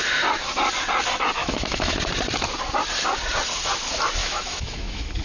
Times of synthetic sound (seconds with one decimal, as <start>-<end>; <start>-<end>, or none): 1.4-2.0; 4.2-5.2